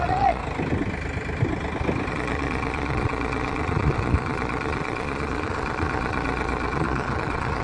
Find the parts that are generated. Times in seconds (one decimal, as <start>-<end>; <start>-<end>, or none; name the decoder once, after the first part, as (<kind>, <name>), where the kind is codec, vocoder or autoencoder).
0.0-0.4 (vocoder, Vocos); 2.1-7.6